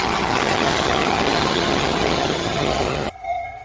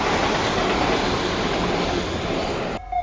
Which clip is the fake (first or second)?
first